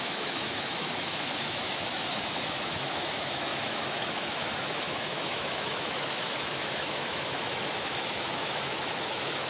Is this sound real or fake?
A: fake